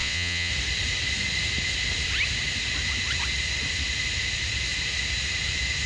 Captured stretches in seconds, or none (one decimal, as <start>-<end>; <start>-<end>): 0.5-5.9